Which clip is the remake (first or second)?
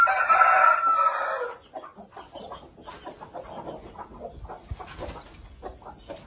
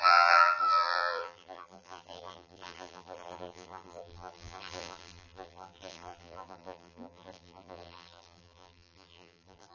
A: second